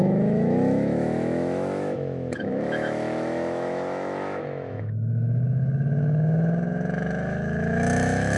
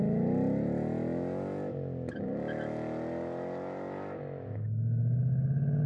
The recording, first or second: second